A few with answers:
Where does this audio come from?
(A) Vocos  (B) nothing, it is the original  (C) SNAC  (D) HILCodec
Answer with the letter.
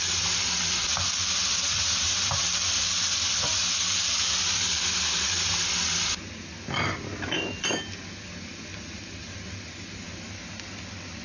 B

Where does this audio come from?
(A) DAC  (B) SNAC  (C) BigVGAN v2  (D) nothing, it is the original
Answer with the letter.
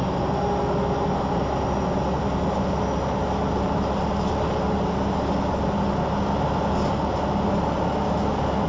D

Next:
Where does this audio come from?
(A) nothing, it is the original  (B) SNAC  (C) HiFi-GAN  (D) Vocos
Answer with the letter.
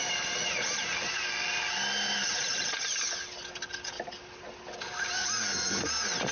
A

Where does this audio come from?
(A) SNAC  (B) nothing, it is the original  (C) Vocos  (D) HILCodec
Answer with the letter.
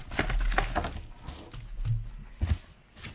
B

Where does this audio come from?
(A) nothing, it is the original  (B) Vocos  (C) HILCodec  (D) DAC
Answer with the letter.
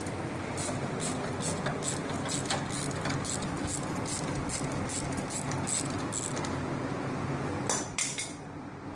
A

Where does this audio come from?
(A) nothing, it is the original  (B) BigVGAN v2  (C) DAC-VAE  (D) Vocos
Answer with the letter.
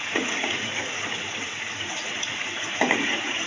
D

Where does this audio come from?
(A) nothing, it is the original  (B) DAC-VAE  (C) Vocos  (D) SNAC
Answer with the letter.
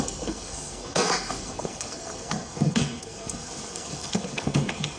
D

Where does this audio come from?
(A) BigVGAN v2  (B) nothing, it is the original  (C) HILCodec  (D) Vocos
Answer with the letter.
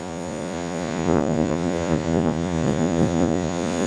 D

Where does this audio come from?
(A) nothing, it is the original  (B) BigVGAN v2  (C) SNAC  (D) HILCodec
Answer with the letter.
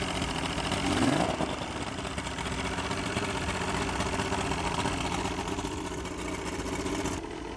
A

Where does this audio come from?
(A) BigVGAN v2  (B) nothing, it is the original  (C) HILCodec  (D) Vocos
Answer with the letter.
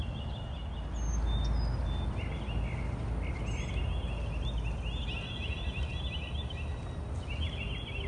B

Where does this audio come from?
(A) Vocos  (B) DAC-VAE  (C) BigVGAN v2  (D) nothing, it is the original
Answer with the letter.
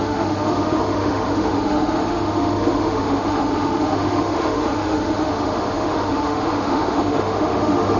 B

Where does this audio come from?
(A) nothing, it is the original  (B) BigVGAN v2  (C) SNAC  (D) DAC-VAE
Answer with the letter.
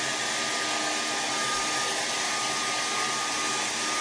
A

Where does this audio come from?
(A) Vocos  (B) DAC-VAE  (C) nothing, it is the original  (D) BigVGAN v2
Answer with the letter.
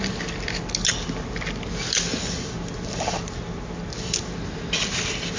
C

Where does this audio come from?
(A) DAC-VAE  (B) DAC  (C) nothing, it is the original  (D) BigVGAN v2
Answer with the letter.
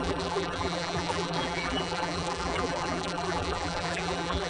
D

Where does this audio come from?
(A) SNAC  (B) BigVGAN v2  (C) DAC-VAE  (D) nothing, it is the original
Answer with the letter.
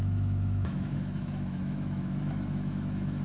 C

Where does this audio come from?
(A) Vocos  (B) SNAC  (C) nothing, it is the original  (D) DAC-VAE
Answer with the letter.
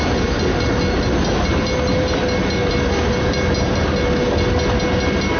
C